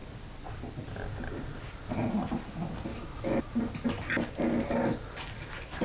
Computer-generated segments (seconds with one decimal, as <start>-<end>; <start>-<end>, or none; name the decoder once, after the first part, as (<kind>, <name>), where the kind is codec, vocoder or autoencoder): 2.9-3.4 (autoencoder, DAC-VAE)